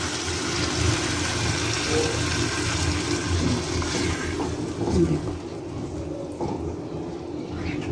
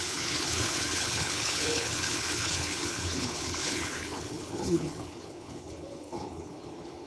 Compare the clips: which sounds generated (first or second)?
second